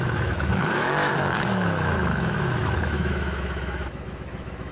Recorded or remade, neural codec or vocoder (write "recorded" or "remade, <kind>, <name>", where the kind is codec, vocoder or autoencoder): remade, autoencoder, DAC-VAE